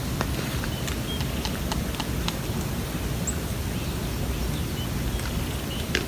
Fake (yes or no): no